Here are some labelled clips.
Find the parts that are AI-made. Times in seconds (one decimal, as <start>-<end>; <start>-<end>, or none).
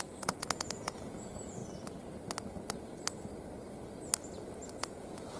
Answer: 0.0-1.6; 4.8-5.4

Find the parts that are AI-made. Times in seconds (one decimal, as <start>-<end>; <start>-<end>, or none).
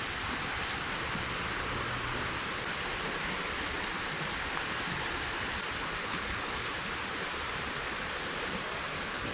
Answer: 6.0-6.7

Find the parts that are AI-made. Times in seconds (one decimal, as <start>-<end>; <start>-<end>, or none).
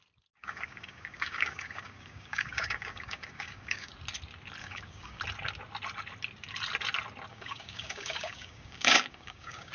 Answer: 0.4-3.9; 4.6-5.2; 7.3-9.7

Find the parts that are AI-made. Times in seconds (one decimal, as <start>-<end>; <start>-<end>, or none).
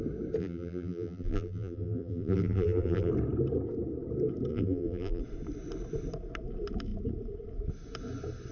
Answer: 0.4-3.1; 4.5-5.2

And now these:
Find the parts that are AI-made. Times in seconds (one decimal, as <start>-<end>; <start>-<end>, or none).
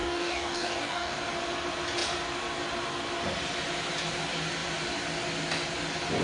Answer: 0.0-1.2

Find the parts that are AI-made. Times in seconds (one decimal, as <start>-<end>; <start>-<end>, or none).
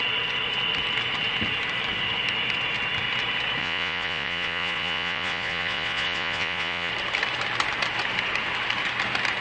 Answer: 3.6-6.9